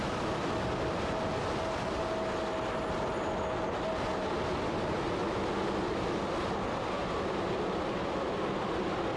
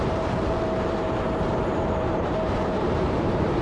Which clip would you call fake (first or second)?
second